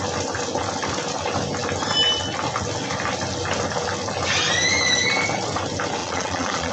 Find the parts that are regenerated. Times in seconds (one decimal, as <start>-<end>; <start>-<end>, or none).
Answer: 6.0-6.7